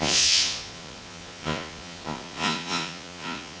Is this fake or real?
fake